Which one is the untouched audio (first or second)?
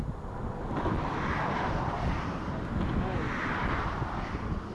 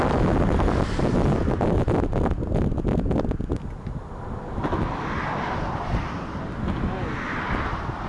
second